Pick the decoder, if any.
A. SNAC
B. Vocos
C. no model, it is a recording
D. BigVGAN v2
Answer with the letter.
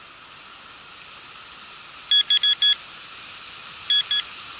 C